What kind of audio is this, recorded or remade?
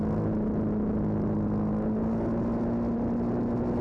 recorded